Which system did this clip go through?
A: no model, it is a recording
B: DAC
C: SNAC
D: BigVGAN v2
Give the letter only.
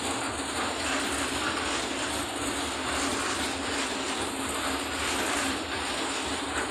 A